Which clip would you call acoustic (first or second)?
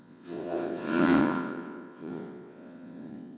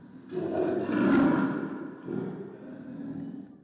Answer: second